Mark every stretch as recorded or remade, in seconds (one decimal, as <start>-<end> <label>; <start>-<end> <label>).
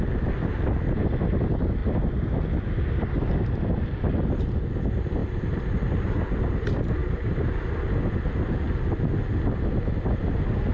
0.0-10.7 recorded